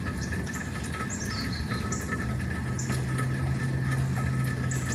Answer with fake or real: real